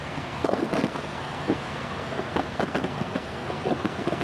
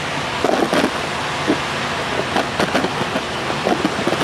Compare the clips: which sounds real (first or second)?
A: second